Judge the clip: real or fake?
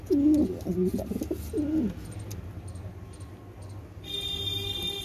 real